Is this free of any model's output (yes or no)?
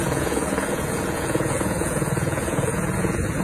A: no